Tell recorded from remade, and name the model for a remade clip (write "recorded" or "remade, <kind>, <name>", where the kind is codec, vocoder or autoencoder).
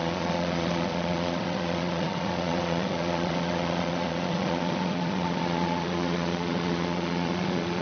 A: remade, vocoder, Vocos